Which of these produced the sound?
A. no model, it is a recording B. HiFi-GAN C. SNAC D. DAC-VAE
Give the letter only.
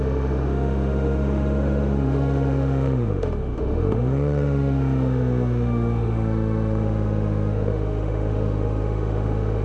D